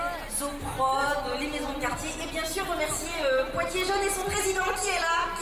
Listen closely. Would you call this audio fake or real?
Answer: real